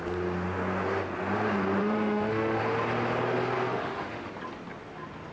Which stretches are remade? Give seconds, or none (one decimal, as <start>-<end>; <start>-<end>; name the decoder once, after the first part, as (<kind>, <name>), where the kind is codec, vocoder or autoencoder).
1.8-2.6 (autoencoder, DAC-VAE); 3.8-4.3

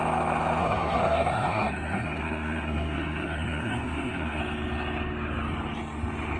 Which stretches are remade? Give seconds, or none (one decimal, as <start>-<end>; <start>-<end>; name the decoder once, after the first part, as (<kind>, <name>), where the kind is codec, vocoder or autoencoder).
0.6-4.4 (codec, SNAC)

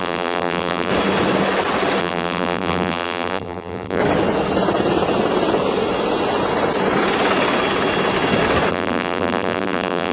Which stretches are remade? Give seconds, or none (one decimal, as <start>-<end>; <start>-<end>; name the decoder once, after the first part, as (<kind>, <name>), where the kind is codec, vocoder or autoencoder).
0.0-0.9 (vocoder, BigVGAN v2); 2.0-4.0; 8.7-10.1